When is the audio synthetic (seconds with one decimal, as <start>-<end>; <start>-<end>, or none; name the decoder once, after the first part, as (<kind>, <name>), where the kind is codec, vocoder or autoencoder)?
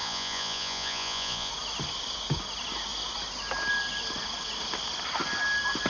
0.0-1.5 (vocoder, Vocos)